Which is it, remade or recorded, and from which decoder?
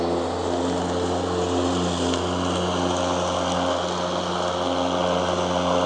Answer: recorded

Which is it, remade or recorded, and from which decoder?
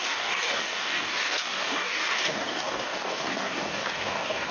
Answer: remade, codec, DAC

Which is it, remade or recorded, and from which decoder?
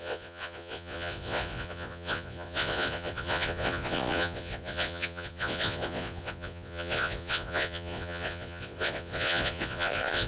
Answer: remade, vocoder, Vocos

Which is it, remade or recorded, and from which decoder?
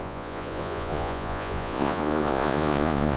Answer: remade, vocoder, Vocos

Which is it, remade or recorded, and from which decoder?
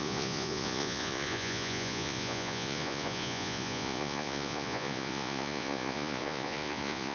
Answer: remade, vocoder, Vocos